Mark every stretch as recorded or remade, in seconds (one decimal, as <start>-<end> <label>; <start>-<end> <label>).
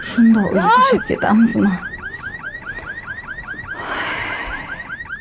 0.0-5.2 recorded